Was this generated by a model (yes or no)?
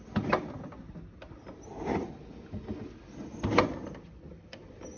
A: no